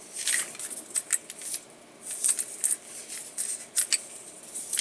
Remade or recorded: recorded